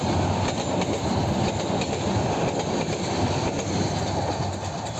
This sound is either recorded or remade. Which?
recorded